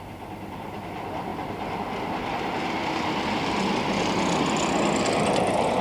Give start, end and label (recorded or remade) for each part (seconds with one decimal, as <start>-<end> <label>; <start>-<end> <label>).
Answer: 0.0-5.8 recorded